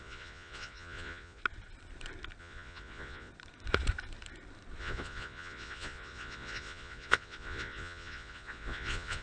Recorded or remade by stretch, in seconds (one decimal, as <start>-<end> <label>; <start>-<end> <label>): 0.0-1.4 remade; 1.4-2.4 recorded; 2.4-3.3 remade; 3.3-4.8 recorded; 4.8-9.2 remade